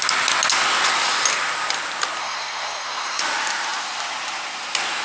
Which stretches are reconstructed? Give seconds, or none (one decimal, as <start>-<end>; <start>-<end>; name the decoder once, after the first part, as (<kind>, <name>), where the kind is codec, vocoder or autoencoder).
2.2-3.2 (codec, SNAC)